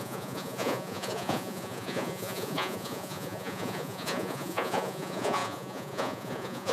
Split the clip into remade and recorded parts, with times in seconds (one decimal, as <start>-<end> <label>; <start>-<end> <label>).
0.0-6.7 remade